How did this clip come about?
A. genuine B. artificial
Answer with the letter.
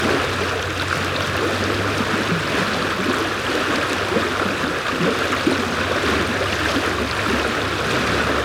A